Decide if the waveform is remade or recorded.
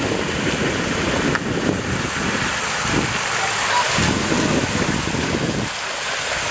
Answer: recorded